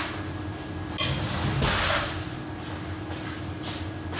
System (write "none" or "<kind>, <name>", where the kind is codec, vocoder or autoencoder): none